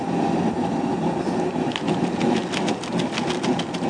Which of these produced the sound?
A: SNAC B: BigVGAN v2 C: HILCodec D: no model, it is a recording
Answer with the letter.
B